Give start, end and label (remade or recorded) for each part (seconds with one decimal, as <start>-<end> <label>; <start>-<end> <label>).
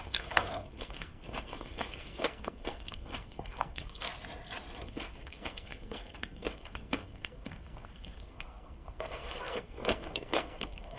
0.0-4.1 remade; 4.1-4.8 recorded; 4.8-11.0 remade